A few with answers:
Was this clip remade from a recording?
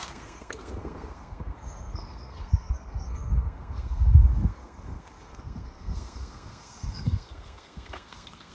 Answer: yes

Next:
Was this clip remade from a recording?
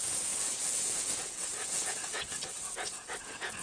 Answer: yes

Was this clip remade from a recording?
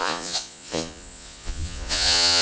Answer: yes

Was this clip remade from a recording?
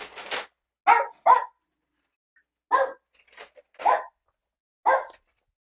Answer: no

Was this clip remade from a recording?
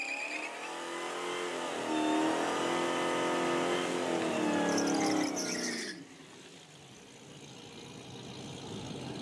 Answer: no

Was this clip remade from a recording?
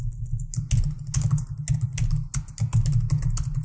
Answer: no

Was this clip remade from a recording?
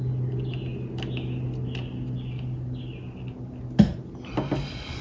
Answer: no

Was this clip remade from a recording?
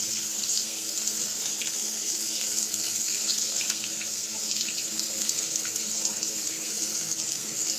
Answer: yes